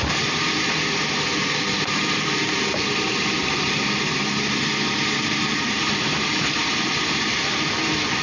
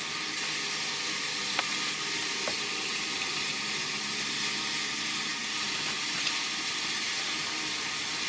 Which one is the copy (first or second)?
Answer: first